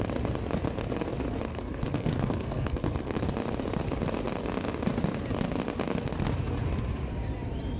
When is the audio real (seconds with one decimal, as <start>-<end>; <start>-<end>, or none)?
0.0-1.5; 3.2-7.8